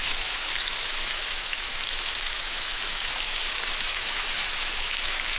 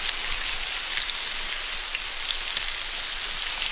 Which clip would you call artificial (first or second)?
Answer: first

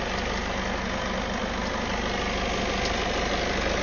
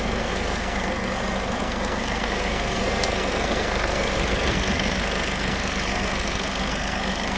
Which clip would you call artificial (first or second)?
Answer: second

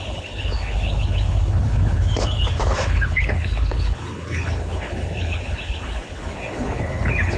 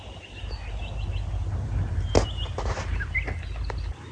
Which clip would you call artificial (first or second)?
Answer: first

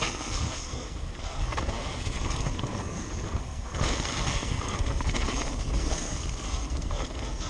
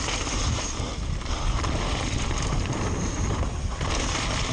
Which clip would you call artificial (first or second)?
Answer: first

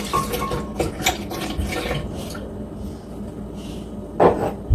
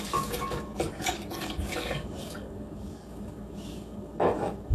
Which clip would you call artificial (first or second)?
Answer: second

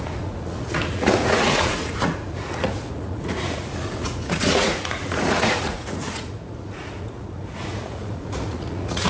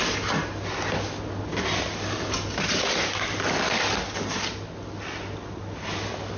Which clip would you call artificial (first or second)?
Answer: first